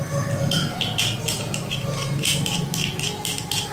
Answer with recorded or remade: recorded